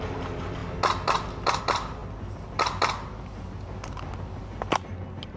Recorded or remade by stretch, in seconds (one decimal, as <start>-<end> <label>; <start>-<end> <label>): 0.0-5.4 recorded